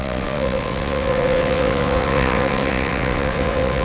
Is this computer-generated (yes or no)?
yes